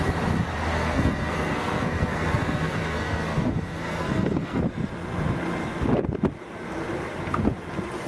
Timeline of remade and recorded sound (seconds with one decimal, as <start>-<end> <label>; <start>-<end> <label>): 0.0-0.7 recorded; 0.7-4.6 remade; 4.6-8.1 recorded